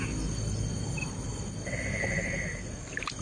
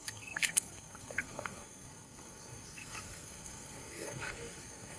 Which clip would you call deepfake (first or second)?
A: second